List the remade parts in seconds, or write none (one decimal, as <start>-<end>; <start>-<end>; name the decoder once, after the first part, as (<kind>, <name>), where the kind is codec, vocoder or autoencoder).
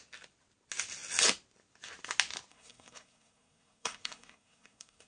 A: 2.5-5.1 (codec, SNAC)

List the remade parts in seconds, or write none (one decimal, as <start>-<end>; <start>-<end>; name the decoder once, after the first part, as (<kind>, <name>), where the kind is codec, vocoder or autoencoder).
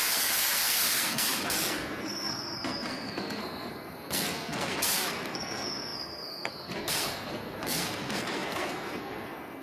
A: 0.0-9.6 (codec, SNAC)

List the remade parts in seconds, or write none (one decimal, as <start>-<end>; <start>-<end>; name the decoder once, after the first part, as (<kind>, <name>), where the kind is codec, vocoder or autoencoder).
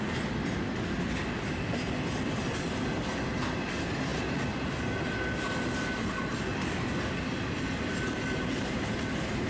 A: none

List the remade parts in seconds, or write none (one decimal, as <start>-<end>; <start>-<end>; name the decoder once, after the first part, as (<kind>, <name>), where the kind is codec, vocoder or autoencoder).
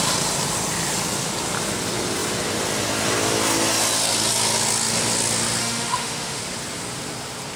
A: 5.6-6.4 (autoencoder, DAC-VAE)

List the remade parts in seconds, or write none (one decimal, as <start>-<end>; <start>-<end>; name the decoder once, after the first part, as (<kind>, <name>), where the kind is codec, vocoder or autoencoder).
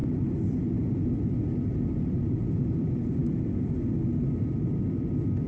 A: none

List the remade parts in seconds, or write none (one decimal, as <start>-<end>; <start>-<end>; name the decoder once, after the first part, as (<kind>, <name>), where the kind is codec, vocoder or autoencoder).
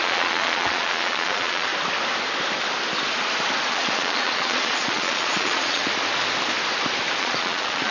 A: 0.0-1.7 (vocoder, Vocos); 3.7-5.8; 7.2-7.9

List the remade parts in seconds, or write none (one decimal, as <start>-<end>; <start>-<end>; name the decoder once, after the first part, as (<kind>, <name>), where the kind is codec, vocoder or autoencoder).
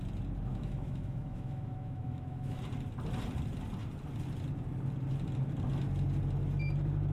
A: 0.5-2.6 (autoencoder, DAC-VAE)